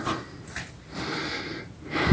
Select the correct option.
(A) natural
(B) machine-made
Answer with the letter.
A